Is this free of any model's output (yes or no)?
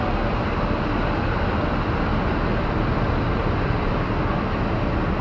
yes